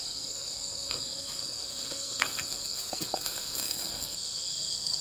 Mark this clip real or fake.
fake